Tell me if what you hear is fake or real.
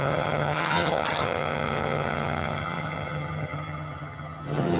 fake